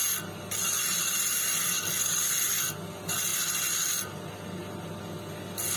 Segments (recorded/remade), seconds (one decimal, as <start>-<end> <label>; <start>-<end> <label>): 0.0-5.8 recorded

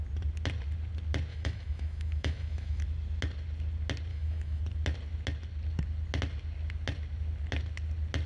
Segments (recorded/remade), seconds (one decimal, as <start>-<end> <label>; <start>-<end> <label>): 0.0-1.3 recorded; 1.3-2.8 remade; 2.8-4.1 recorded; 4.1-4.6 remade; 4.6-8.3 recorded

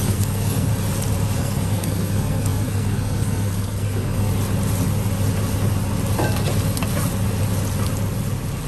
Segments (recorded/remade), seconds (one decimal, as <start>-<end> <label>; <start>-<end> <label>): 0.0-0.7 remade; 0.7-1.4 recorded; 1.4-4.3 remade; 4.3-8.7 recorded

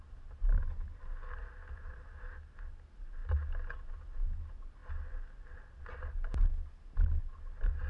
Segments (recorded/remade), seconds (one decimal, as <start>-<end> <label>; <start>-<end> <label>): 0.0-7.9 recorded

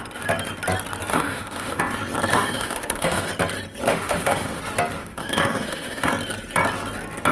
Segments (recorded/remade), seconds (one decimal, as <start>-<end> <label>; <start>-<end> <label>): 0.0-1.1 recorded; 1.1-1.8 remade; 1.8-2.3 recorded; 2.3-3.3 remade; 3.3-3.9 recorded; 3.9-4.6 remade; 4.6-5.0 recorded; 5.0-6.1 remade; 6.1-7.3 recorded